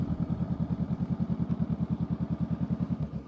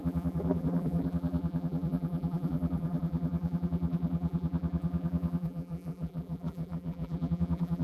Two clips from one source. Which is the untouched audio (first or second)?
first